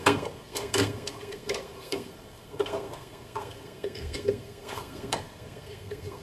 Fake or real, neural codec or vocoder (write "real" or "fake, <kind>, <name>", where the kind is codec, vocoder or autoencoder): fake, codec, SNAC